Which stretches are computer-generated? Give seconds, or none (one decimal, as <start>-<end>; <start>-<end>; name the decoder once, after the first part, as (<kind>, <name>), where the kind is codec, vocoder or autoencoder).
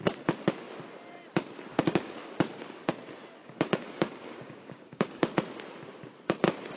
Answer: 1.7-2.3 (codec, DAC); 3.4-5.3